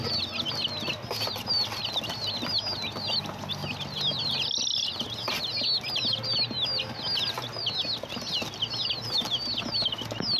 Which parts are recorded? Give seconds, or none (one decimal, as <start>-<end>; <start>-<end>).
0.0-10.4